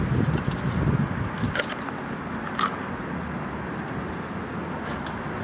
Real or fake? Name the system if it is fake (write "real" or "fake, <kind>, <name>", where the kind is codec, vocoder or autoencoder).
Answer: real